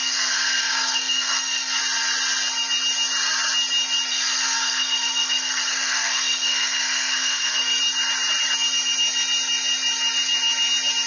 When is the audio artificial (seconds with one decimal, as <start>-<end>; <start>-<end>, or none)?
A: 0.0-1.8; 4.1-7.8